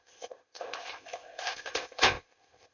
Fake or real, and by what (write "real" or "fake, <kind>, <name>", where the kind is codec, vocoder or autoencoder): fake, codec, ZipCodec